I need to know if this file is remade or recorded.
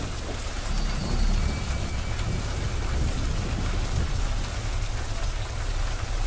recorded